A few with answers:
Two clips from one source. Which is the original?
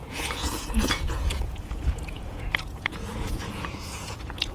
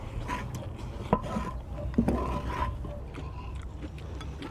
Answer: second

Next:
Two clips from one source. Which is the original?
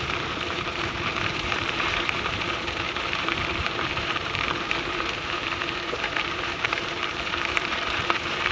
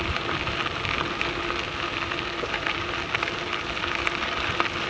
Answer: second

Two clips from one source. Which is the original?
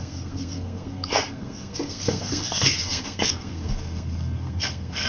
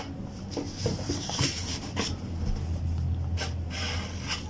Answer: second